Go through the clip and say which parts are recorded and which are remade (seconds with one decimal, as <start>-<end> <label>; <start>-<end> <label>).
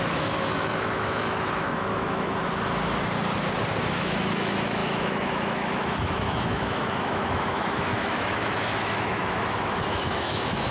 0.0-2.4 remade; 2.4-3.9 recorded; 3.9-10.7 remade